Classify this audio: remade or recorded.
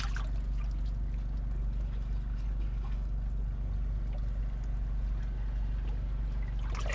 recorded